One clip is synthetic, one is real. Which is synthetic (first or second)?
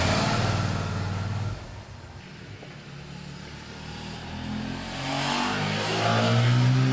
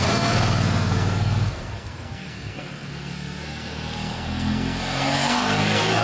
second